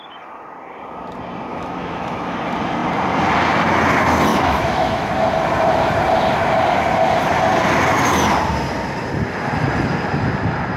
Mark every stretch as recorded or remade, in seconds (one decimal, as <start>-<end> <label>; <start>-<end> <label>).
0.0-1.5 recorded; 1.5-2.4 remade; 2.4-4.3 recorded; 4.3-5.1 remade; 5.1-10.8 recorded